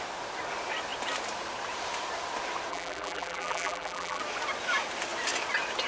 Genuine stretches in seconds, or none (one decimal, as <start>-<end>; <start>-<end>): 0.0-2.7; 4.2-5.9